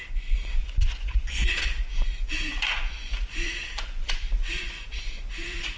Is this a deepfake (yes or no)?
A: yes